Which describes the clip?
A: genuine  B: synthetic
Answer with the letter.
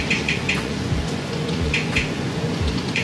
B